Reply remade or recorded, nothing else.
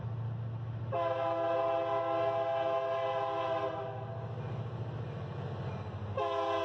recorded